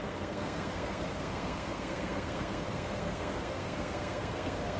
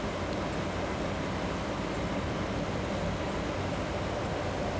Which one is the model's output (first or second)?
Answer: first